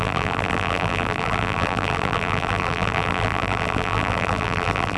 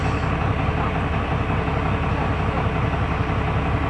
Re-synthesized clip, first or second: first